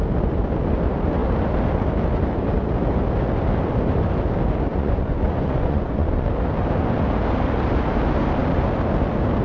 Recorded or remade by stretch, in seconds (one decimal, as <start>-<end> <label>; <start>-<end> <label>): 0.0-4.7 recorded; 4.7-6.3 remade; 6.3-9.4 recorded